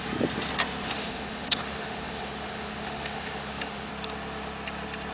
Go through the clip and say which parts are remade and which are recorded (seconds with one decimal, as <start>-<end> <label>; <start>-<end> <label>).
0.0-0.8 recorded; 0.8-3.9 remade; 3.9-5.1 recorded